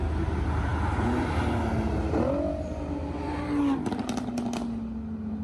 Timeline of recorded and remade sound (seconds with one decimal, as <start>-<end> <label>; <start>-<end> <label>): 0.0-5.4 recorded